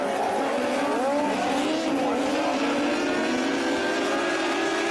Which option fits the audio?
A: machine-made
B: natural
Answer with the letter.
B